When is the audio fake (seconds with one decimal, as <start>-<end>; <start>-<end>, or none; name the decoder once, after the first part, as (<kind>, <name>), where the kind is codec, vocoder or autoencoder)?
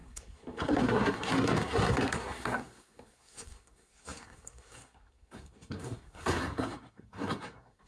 0.0-7.9 (codec, SNAC)